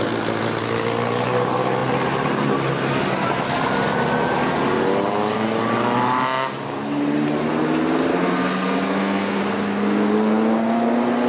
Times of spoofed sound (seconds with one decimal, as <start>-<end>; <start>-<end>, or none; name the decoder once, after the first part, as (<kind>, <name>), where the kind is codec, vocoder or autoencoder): 8.1-9.4 (codec, SNAC)